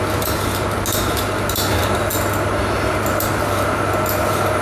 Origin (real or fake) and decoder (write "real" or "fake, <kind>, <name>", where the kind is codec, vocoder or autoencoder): real